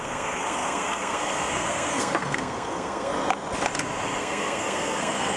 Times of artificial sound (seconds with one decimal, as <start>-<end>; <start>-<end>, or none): 0.0-3.1; 4.2-5.4